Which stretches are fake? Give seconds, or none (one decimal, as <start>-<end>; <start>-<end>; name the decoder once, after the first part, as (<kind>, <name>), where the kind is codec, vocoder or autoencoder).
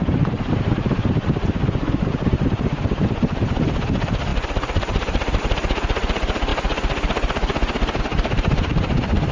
0.0-6.5 (vocoder, BigVGAN v2); 8.0-9.3